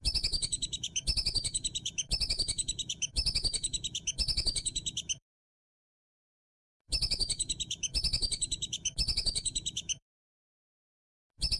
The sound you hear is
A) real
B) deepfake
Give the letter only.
B